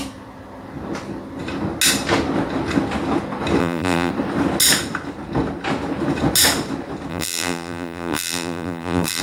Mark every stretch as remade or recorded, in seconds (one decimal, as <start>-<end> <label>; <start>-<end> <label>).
0.0-3.6 recorded; 3.6-4.1 remade; 4.1-7.1 recorded; 7.1-9.2 remade